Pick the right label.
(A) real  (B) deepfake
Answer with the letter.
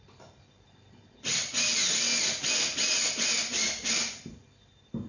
A